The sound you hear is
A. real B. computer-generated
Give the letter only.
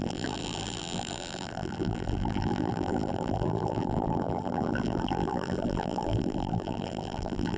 B